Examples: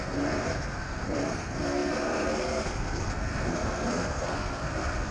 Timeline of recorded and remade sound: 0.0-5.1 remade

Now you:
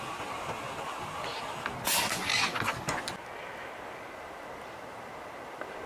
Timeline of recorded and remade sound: 0.0-5.9 recorded